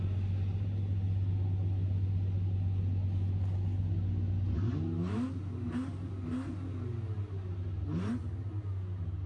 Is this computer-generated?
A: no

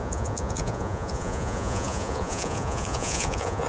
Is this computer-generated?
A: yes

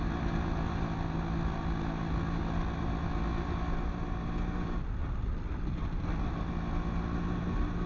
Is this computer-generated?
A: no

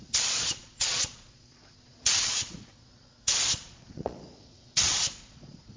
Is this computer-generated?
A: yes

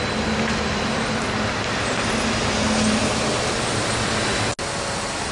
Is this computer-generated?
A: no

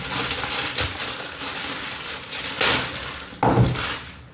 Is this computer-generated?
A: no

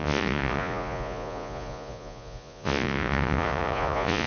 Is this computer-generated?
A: yes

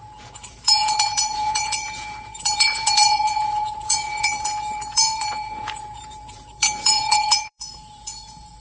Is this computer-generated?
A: yes